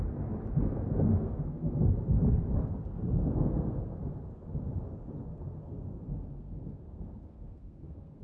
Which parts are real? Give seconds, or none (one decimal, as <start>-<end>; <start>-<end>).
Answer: 0.0-1.1; 1.9-3.2; 4.0-5.2